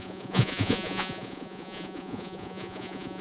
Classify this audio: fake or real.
fake